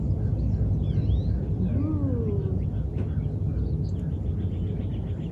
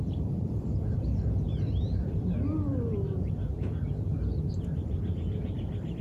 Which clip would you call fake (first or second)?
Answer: second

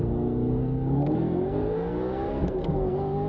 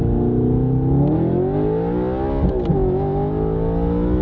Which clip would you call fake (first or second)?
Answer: first